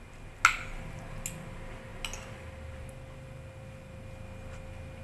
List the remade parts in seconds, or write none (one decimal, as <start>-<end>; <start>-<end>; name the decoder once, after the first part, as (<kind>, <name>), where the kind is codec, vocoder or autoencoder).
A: none